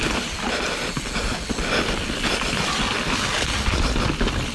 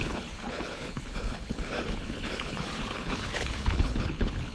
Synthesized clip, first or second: second